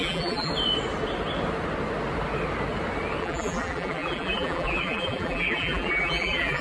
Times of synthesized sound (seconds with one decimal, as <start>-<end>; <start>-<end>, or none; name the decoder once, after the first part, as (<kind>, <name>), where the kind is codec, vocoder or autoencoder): 0.0-0.5 (vocoder, BigVGAN v2); 3.2-6.6